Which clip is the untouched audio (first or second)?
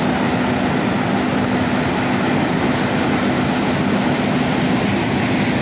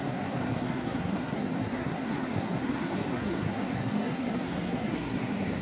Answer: first